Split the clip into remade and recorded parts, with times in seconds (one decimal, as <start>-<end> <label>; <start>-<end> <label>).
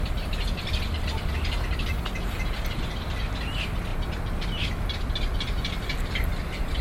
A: 0.0-6.8 recorded